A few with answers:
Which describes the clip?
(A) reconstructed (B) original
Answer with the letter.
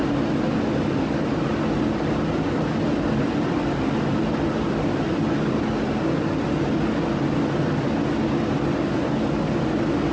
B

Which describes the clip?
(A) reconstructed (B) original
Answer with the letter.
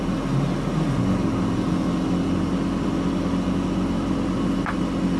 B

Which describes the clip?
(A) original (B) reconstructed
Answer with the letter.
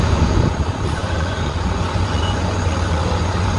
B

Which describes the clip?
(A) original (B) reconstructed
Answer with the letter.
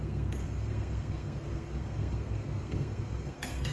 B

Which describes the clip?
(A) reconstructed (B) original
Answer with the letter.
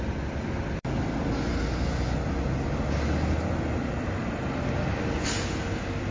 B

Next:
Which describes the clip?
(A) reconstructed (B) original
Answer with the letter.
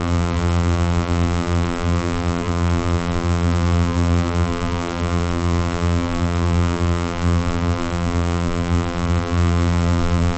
A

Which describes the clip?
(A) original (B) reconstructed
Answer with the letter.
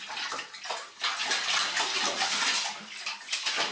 A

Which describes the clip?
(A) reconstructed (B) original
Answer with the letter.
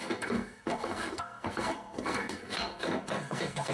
A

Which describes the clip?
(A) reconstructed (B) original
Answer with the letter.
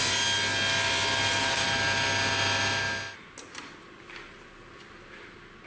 B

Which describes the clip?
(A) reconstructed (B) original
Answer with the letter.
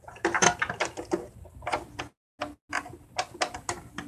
B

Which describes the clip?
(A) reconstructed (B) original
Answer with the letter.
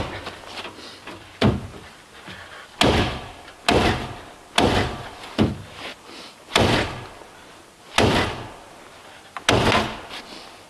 B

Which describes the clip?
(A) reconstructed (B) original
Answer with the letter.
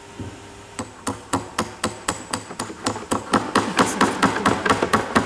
B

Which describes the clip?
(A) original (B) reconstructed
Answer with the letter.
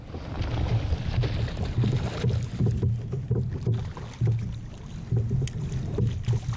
A